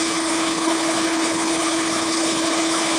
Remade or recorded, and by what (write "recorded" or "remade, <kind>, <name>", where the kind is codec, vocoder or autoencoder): remade, codec, HILCodec